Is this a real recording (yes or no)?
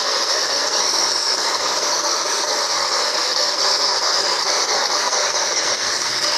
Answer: no